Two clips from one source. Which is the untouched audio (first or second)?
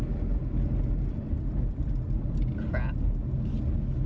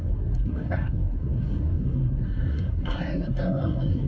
first